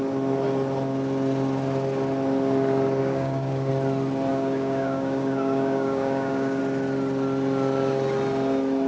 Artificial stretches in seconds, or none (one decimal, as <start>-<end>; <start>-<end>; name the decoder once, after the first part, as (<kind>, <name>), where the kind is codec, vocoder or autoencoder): 3.0-3.7 (codec, DAC); 4.3-6.6